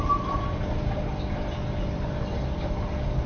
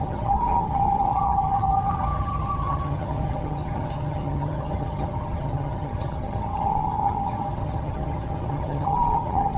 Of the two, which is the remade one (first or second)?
second